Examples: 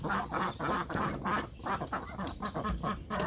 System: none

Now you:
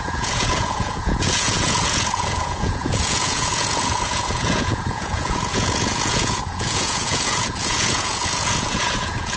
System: vocoder, Vocos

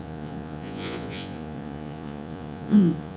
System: vocoder, Vocos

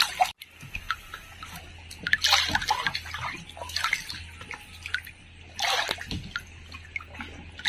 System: none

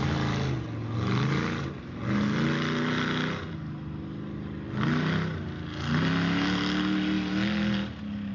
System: none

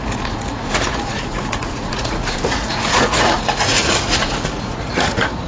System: vocoder, Vocos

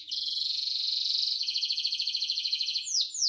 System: vocoder, Vocos